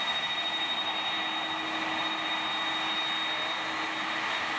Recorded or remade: recorded